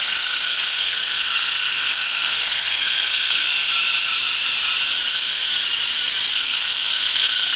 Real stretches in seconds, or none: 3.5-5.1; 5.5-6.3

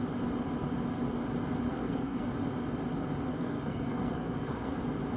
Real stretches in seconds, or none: 0.0-1.7; 2.3-3.3; 4.8-5.2

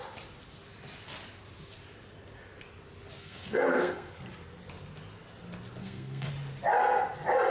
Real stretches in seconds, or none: 0.0-3.2; 4.1-5.8; 6.3-7.5

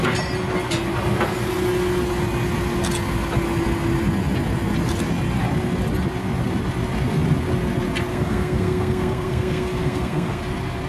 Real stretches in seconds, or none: 0.0-8.1; 10.4-10.9

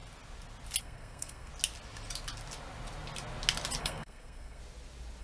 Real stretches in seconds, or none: 0.0-0.8; 1.5-3.8; 4.6-5.2

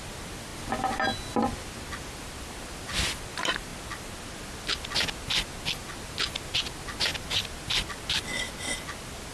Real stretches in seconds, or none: 0.0-9.3